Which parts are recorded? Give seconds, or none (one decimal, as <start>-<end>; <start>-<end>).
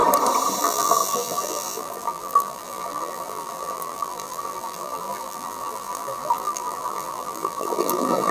0.0-0.6